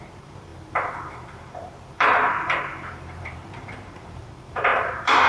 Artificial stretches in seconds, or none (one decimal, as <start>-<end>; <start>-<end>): 0.0-5.3